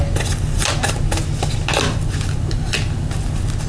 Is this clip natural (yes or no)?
yes